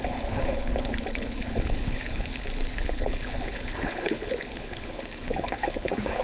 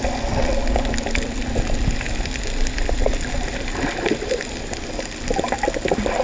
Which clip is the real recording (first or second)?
second